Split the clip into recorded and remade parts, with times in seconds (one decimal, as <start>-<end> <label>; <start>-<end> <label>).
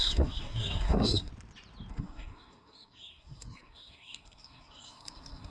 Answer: 0.0-1.3 remade; 1.3-1.9 recorded; 1.9-5.5 remade